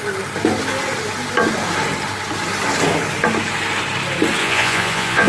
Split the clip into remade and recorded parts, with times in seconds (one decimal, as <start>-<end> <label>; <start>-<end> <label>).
0.0-4.4 recorded; 4.4-5.3 remade